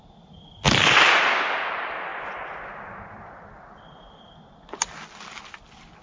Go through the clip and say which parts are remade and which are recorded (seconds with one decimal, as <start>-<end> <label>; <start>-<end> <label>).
0.0-6.0 recorded